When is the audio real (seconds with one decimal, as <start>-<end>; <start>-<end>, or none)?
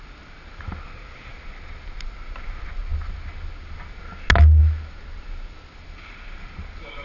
0.0-7.0